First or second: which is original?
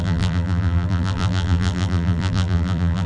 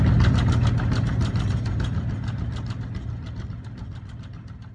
second